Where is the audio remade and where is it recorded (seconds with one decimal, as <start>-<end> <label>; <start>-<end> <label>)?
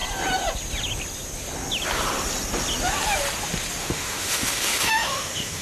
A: 0.0-3.8 recorded; 3.8-5.6 remade